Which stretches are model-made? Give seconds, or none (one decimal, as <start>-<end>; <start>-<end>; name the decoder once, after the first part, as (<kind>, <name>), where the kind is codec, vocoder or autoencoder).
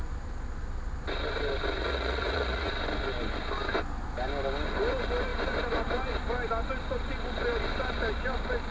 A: 1.8-2.7 (vocoder, Vocos)